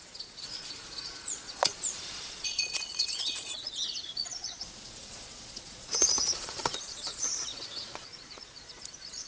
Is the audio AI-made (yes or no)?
yes